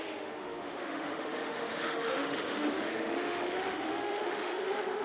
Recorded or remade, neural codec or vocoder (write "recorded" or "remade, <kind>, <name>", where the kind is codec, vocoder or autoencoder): remade, autoencoder, DAC-VAE